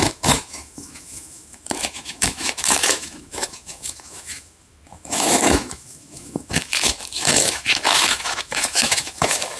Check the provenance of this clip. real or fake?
fake